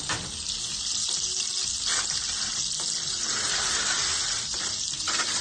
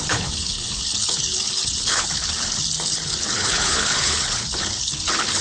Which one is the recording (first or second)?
first